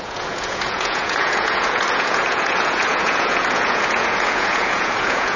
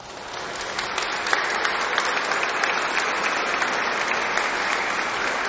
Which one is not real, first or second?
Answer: first